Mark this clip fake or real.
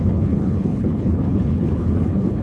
fake